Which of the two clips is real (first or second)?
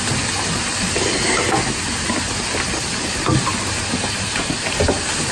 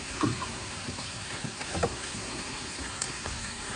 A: first